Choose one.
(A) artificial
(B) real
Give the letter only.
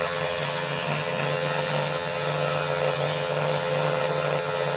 A